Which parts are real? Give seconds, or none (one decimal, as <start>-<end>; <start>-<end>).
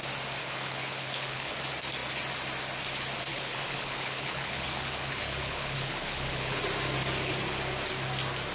0.0-0.4; 1.5-3.3; 6.6-8.5